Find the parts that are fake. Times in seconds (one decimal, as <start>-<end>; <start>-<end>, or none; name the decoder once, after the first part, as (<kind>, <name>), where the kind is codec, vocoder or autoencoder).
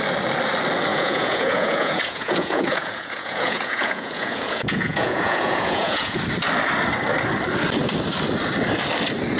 0.9-6.2 (vocoder, Vocos)